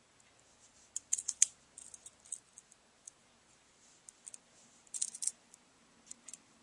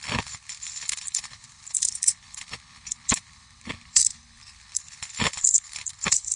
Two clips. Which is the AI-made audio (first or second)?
second